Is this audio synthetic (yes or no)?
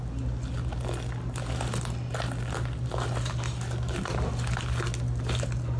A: no